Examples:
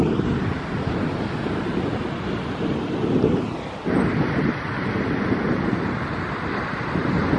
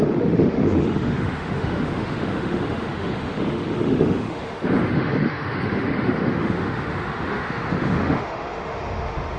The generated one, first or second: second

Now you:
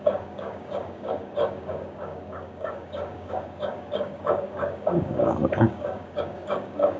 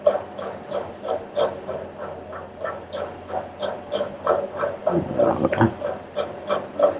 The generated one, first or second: first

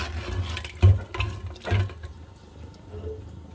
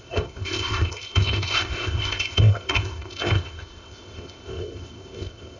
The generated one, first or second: second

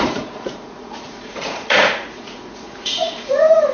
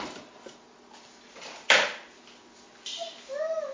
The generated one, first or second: first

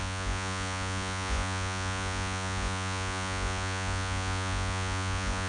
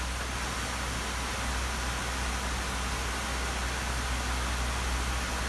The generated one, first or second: first